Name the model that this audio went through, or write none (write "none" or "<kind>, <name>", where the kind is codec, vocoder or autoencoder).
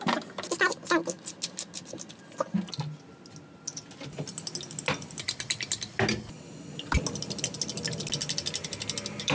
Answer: none